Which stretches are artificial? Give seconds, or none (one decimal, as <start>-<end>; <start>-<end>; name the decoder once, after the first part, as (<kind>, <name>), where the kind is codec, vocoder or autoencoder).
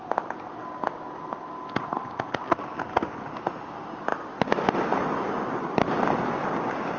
0.6-2.0 (vocoder, BigVGAN v2); 4.1-5.8